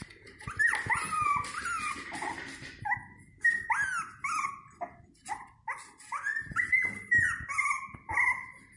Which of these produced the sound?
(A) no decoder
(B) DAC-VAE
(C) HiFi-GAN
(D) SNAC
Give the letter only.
A